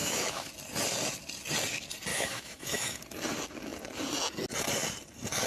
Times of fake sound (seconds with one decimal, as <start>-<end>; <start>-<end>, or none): 0.0-0.5; 2.1-3.0